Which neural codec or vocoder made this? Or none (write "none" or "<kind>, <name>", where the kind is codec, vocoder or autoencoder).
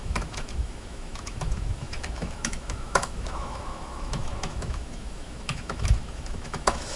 autoencoder, DAC-VAE